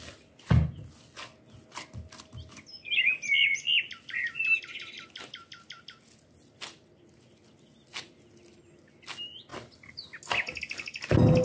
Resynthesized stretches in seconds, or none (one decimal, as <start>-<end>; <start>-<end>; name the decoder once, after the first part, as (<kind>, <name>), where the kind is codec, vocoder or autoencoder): none

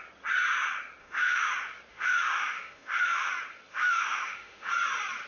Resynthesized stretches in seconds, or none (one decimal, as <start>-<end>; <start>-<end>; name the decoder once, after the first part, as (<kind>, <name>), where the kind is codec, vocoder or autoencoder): 1.0-1.5 (autoencoder, DAC-VAE); 1.9-3.3; 3.7-4.7